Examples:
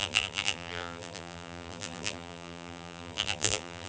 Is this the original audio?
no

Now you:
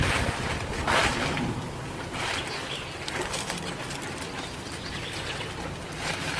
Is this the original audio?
no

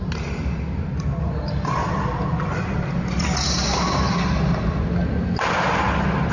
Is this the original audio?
yes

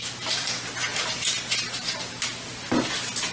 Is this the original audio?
yes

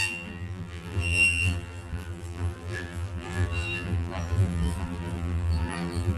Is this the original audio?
no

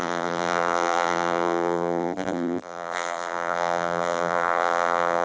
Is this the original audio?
no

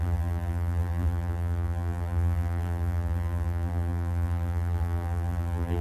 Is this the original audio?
no